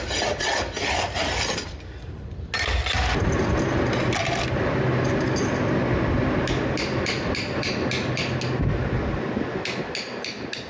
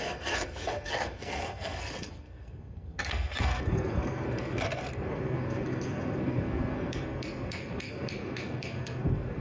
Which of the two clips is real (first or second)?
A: first